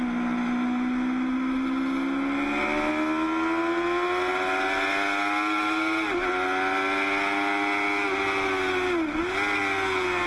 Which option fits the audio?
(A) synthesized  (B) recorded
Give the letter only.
B